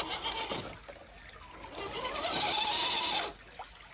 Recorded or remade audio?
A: recorded